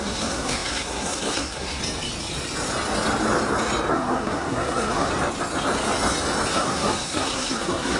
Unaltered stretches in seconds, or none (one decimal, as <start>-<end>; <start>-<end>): 1.8-3.9; 5.1-6.5